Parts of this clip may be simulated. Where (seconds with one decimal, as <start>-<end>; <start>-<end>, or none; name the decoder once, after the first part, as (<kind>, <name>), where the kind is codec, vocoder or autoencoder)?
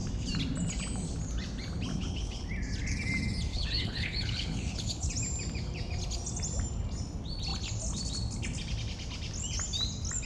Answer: 1.9-2.5 (codec, HILCodec); 3.5-5.1